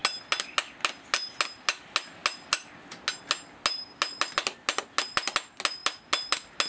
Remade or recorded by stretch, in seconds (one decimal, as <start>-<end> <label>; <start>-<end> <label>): 0.0-6.7 recorded